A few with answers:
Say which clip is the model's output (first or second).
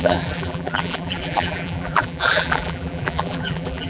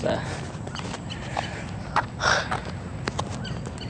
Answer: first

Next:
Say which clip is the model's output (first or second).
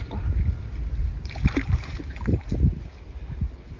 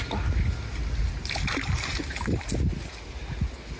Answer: first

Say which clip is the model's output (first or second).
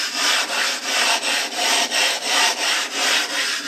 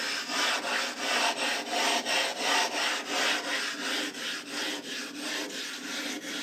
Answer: first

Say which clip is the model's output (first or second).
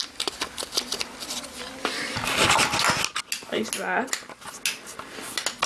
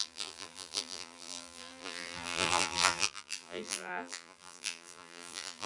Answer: second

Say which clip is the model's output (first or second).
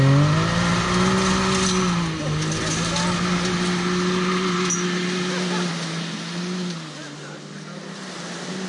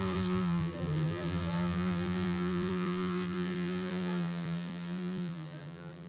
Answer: second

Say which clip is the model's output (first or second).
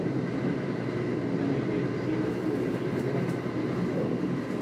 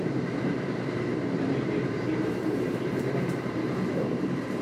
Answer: second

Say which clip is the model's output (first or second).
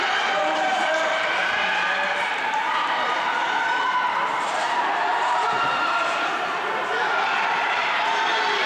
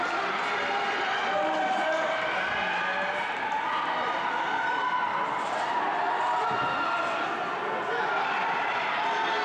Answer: first